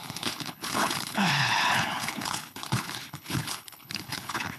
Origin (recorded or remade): remade